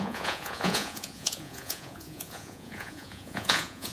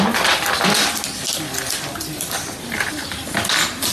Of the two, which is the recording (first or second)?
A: second